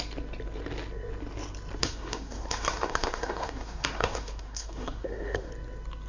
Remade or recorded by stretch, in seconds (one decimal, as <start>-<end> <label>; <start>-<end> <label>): 0.0-1.8 recorded; 1.8-5.5 remade; 5.5-6.1 recorded